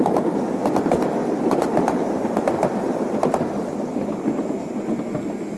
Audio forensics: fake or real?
real